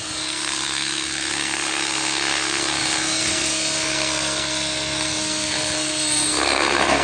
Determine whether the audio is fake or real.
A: fake